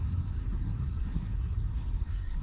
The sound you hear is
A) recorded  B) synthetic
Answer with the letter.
B